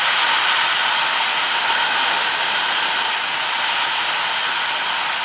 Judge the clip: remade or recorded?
recorded